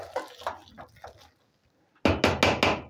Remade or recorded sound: recorded